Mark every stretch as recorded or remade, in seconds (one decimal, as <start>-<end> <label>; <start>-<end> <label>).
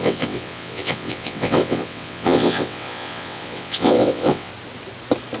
0.0-4.5 remade; 4.5-5.4 recorded